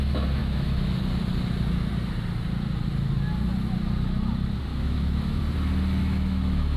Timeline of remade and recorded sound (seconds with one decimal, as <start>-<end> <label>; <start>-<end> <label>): 0.0-0.4 recorded; 0.4-1.0 remade; 1.0-4.7 recorded; 4.7-5.4 remade; 5.4-6.0 recorded; 6.0-6.8 remade